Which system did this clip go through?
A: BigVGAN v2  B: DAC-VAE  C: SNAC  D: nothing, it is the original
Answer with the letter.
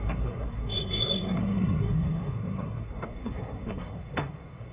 C